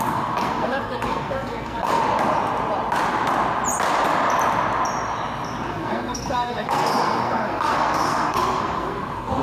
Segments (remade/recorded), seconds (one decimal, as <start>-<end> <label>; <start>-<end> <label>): 0.0-2.0 remade; 2.0-5.7 recorded; 5.7-9.4 remade